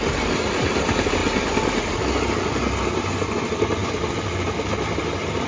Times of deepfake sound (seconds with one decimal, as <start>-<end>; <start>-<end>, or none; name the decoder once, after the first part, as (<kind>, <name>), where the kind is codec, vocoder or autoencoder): none